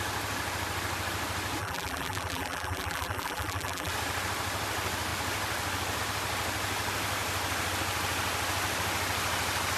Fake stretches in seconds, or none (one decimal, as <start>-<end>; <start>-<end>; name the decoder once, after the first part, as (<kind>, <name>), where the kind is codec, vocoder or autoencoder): 1.6-3.9 (vocoder, BigVGAN v2)